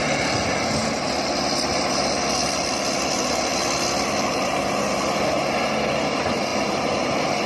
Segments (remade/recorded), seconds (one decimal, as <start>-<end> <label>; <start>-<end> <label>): 0.0-6.5 recorded; 6.5-7.5 remade